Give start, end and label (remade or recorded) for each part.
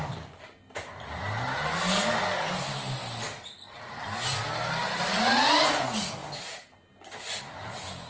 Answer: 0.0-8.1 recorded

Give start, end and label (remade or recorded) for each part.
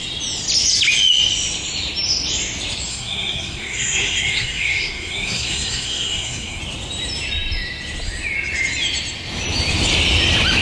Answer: 0.0-2.9 recorded; 2.9-6.6 remade; 6.6-10.6 recorded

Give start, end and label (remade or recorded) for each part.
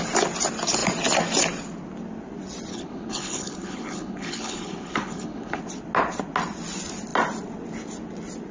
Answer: 0.0-2.7 recorded; 2.7-5.6 remade; 5.6-8.5 recorded